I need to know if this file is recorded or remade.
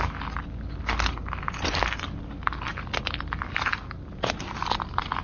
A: recorded